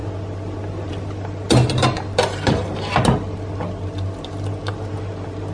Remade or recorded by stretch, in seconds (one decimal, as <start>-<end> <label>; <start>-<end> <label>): 0.0-5.5 recorded